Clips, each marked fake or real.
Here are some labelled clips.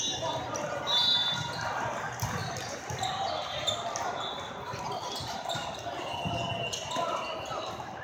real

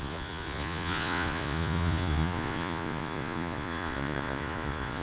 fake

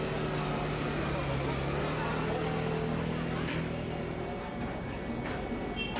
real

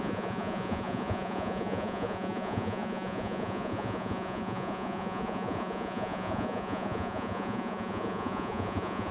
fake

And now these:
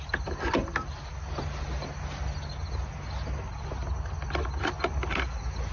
real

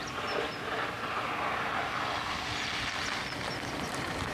real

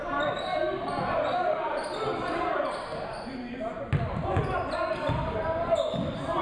real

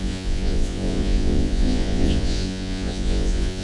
fake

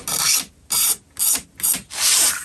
real